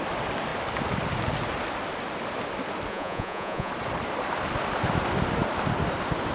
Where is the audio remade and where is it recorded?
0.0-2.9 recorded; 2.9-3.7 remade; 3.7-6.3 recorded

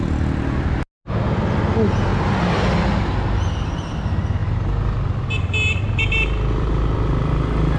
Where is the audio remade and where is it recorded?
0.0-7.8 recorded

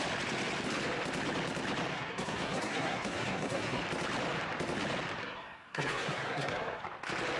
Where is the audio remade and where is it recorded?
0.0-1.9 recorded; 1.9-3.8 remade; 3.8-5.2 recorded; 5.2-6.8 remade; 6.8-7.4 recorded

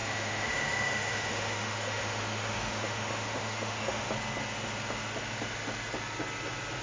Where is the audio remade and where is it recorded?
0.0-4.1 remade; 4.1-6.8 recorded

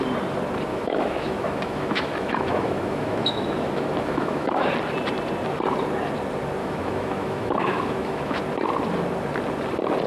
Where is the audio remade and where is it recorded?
0.0-0.7 recorded; 0.7-4.7 remade; 4.7-6.6 recorded; 6.6-8.4 remade; 8.4-10.1 recorded

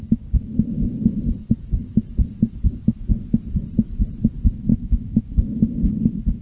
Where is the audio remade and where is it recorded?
0.0-0.5 recorded; 0.5-1.1 remade; 1.1-4.7 recorded; 4.7-5.9 remade; 5.9-6.4 recorded